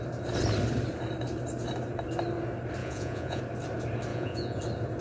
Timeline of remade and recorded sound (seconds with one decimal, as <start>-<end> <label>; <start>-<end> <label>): 0.0-2.8 recorded; 2.8-3.4 remade; 3.4-4.1 recorded; 4.1-4.6 remade; 4.6-5.0 recorded